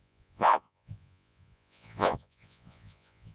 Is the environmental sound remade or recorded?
remade